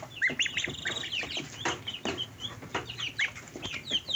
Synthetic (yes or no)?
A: no